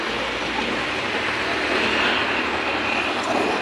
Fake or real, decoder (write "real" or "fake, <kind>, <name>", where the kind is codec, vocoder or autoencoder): real